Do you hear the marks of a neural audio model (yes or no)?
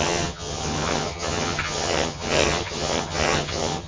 yes